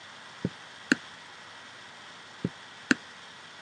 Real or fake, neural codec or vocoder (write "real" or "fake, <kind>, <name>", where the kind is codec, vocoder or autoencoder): real